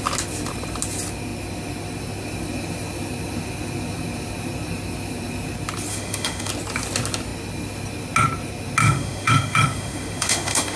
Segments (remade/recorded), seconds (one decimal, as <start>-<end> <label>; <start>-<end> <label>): 0.0-5.9 recorded; 5.9-6.5 remade; 6.5-8.8 recorded; 8.8-10.8 remade